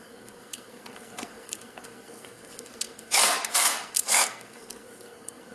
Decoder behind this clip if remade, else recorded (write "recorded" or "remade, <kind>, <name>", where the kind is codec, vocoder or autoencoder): remade, codec, SNAC